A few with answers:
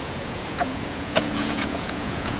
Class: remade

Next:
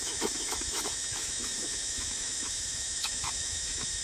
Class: remade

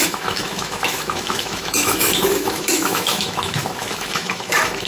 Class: remade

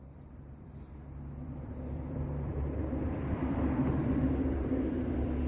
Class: remade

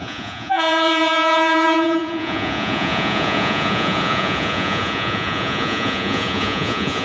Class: remade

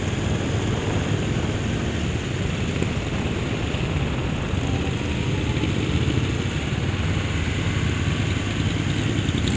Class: recorded